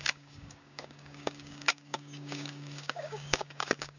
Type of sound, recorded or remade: remade